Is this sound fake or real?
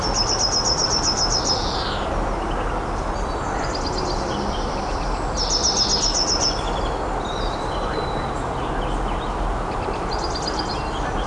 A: real